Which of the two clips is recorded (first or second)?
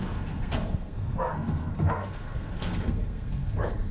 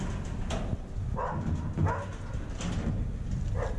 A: second